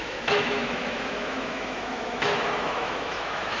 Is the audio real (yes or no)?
no